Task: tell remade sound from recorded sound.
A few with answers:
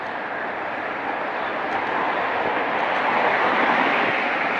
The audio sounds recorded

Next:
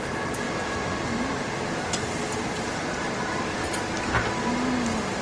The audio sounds recorded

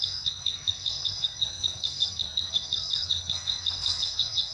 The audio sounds remade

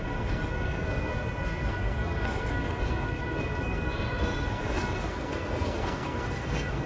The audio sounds remade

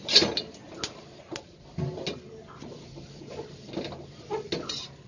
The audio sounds recorded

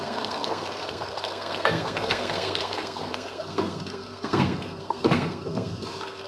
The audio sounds remade